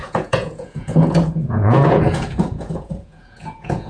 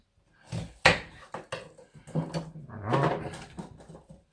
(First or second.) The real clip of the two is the second